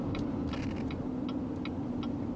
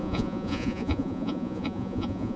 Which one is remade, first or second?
second